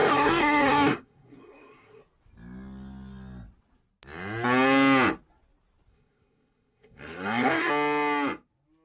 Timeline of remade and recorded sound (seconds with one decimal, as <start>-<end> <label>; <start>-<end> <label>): 0.0-2.0 remade; 2.0-5.9 recorded; 5.9-7.7 remade; 7.7-8.8 recorded